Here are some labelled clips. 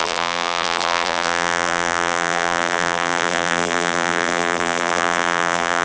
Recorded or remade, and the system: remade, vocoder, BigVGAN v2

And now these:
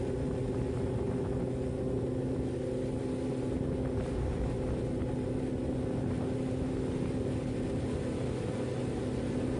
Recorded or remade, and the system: recorded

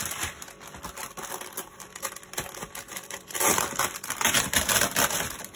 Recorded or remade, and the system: remade, vocoder, BigVGAN v2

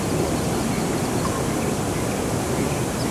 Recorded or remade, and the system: recorded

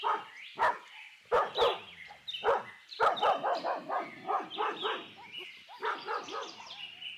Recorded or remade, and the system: remade, vocoder, BigVGAN v2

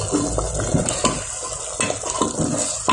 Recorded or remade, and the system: recorded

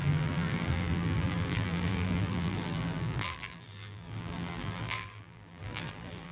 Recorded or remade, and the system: remade, vocoder, BigVGAN v2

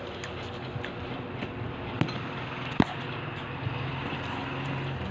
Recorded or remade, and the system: recorded